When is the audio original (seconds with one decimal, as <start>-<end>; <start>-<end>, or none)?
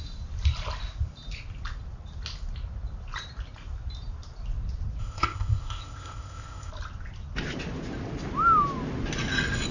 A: 0.0-5.0; 6.7-9.7